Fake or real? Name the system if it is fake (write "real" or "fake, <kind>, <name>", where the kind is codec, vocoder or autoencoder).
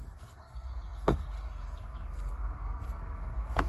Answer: fake, codec, SNAC